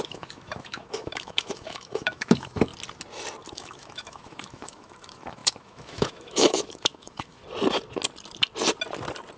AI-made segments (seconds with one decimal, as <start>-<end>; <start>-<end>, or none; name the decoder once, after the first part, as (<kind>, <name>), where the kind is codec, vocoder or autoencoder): 0.0-2.7 (autoencoder, DAC-VAE); 3.5-7.4